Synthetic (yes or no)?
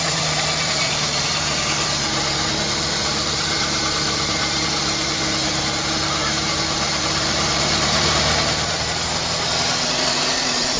yes